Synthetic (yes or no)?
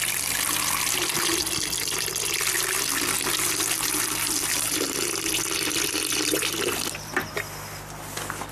no